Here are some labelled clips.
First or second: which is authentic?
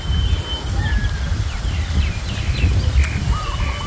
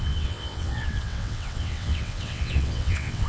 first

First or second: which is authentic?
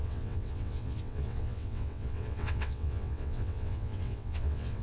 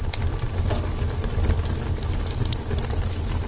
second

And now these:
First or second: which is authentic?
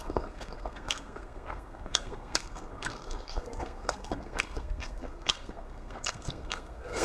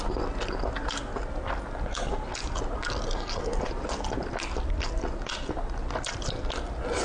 second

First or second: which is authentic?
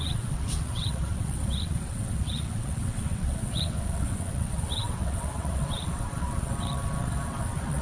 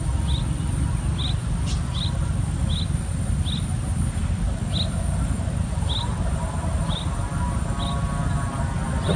second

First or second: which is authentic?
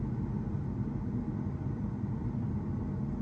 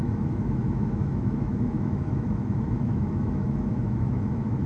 first